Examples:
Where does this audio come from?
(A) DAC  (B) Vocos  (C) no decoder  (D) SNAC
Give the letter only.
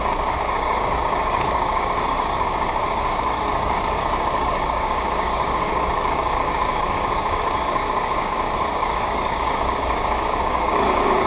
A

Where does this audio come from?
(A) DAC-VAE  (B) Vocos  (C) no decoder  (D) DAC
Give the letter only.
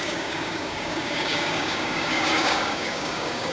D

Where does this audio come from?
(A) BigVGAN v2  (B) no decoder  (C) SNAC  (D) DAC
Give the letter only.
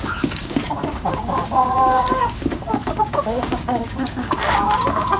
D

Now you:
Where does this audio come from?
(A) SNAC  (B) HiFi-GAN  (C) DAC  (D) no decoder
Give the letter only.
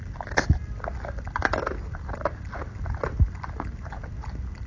D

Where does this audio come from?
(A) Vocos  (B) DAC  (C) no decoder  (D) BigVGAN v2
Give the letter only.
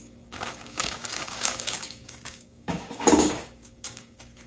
B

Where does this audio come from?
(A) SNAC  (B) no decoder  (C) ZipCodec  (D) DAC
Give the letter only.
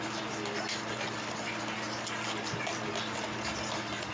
B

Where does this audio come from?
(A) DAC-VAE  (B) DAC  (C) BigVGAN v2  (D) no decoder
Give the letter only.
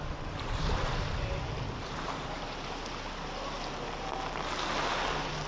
D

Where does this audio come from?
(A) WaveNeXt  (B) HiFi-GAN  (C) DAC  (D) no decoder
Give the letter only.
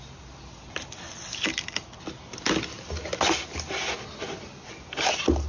D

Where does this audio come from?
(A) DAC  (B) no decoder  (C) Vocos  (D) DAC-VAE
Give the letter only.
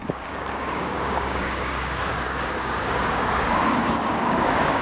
A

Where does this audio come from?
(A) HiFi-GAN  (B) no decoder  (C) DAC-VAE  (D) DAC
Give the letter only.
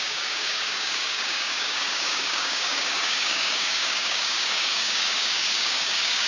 D